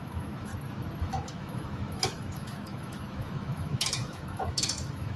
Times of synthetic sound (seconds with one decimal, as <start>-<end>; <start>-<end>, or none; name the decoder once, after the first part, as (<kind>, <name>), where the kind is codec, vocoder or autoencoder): 0.0-0.5 (autoencoder, DAC-VAE); 1.0-5.2